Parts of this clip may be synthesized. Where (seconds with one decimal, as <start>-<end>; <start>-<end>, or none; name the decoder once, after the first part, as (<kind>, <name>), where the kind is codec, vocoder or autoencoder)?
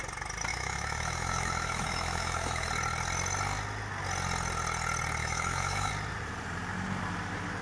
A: 0.5-2.7 (autoencoder, DAC-VAE); 5.2-5.9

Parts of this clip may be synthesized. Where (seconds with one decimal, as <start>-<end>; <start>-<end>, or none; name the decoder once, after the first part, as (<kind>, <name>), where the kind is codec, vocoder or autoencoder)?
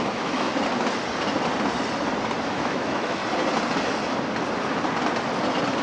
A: 0.0-0.5 (autoencoder, DAC-VAE); 2.5-3.2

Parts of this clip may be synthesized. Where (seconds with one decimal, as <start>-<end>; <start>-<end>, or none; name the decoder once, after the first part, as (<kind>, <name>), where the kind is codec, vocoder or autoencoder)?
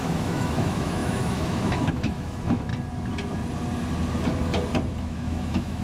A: 0.0-2.7 (autoencoder, DAC-VAE); 5.0-5.8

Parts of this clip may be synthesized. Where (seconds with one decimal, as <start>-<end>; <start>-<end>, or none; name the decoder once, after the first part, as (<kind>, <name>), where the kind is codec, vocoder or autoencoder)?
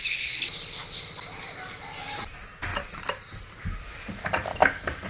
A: 4.5-5.1 (autoencoder, DAC-VAE)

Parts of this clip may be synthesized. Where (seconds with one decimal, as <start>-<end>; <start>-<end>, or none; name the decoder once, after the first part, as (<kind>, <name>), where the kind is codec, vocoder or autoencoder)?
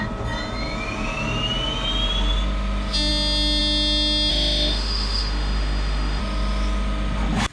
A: 4.3-6.2 (autoencoder, DAC-VAE)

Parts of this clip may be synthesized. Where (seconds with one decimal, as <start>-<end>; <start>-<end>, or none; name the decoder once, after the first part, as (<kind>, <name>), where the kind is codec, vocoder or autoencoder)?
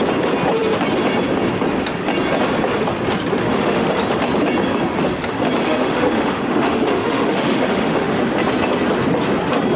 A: 3.4-3.9 (autoencoder, DAC-VAE); 5.6-8.2